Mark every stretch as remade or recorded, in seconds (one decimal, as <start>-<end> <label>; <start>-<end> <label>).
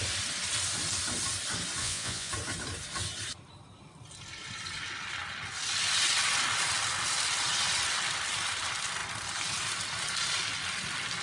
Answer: 0.0-1.8 recorded; 1.8-2.3 remade; 2.3-11.2 recorded